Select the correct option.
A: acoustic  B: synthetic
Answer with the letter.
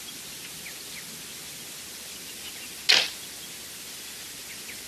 A